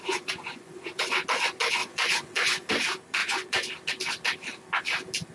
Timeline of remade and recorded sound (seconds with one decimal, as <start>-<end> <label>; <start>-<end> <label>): 0.0-1.1 remade; 1.1-1.8 recorded; 1.8-2.7 remade; 2.7-3.2 recorded; 3.2-3.7 remade; 3.7-5.3 recorded